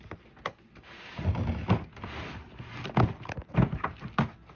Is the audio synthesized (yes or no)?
no